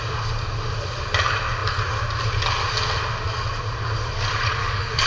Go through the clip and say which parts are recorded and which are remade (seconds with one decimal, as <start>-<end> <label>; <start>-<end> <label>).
0.0-4.6 recorded; 4.6-5.1 remade

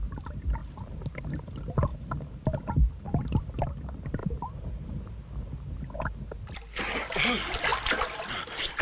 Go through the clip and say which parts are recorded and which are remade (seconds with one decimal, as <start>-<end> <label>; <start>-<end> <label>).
0.0-0.6 recorded; 0.6-1.2 remade; 1.2-4.2 recorded; 4.2-5.0 remade; 5.0-8.8 recorded

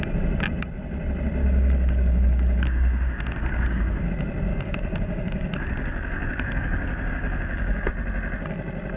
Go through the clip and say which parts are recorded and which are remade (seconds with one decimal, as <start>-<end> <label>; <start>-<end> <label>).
0.0-1.4 recorded; 1.4-4.1 remade; 4.1-4.5 recorded; 4.5-7.9 remade; 7.9-9.0 recorded